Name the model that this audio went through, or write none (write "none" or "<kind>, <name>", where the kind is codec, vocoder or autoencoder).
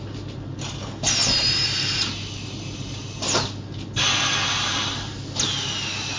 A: none